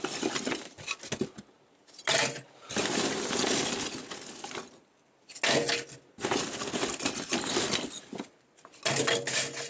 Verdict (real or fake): real